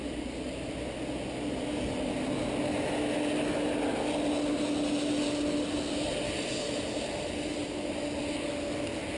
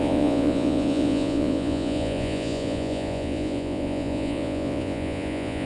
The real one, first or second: first